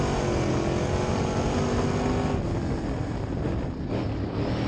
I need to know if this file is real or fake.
real